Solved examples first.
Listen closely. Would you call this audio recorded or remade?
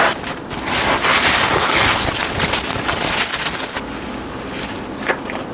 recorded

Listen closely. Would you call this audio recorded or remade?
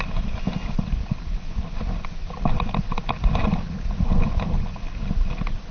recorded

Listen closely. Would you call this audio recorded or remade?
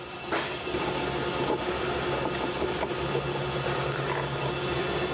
recorded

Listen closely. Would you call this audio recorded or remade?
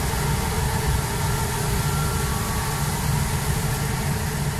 recorded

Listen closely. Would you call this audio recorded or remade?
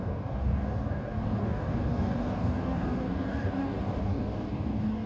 remade